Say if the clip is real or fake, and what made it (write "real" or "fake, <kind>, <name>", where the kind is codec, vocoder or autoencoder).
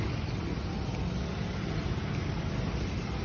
real